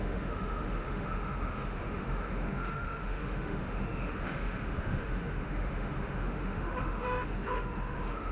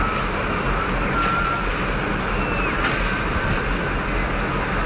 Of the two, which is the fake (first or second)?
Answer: first